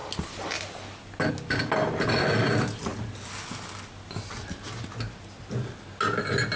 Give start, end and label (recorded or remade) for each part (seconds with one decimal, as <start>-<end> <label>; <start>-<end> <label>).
0.0-6.6 recorded